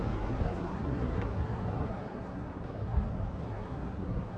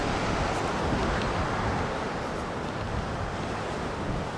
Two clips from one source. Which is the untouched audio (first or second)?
second